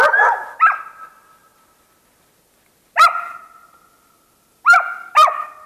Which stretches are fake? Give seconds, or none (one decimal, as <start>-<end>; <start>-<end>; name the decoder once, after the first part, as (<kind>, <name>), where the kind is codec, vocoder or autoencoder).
none